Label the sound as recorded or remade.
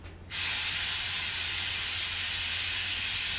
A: recorded